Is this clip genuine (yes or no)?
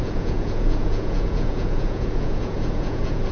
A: no